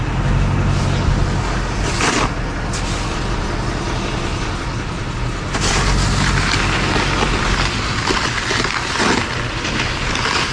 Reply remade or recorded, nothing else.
recorded